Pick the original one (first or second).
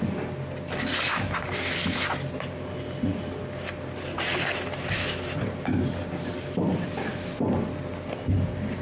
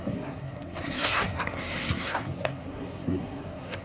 first